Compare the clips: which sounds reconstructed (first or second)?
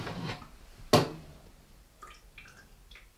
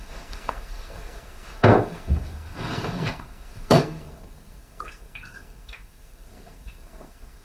second